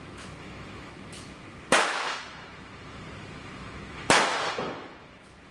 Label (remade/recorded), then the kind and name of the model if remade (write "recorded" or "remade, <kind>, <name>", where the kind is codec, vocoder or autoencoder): remade, autoencoder, DAC-VAE